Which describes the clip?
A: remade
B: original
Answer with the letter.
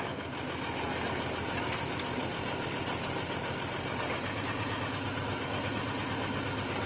B